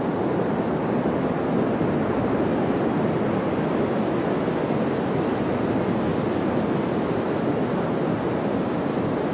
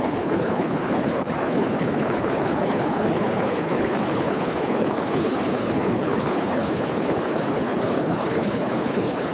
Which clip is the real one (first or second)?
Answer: first